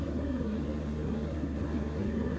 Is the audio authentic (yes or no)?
no